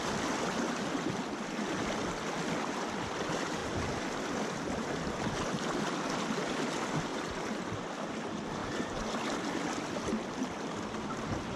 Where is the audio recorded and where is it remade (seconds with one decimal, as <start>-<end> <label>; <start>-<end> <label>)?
0.0-11.6 recorded